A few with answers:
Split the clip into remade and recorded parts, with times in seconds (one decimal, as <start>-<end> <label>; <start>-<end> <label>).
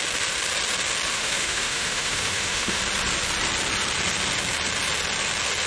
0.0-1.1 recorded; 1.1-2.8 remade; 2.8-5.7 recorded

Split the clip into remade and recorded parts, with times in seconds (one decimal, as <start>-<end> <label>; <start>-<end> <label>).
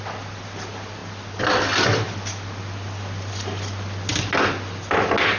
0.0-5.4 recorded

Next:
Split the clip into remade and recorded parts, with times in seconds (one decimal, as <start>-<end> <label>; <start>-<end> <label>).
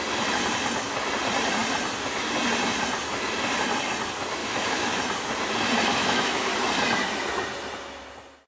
0.0-4.4 recorded; 4.4-5.0 remade; 5.0-5.9 recorded; 5.9-6.5 remade; 6.5-8.5 recorded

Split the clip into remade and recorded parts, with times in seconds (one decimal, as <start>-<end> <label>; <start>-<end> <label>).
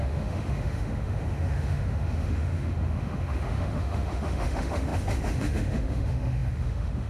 0.0-7.1 remade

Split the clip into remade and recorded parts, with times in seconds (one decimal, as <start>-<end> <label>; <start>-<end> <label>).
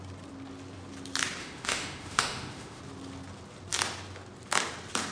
0.0-1.4 recorded; 1.4-2.8 remade; 2.8-5.1 recorded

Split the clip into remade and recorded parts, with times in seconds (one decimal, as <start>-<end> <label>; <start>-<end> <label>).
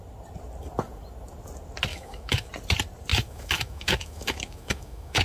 0.0-1.9 recorded; 1.9-2.5 remade; 2.5-3.1 recorded; 3.1-5.2 remade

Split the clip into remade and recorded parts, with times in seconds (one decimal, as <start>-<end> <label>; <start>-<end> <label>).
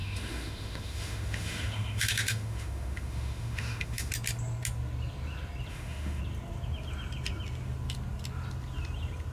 0.0-4.1 remade; 4.1-5.7 recorded; 5.7-6.2 remade; 6.2-9.3 recorded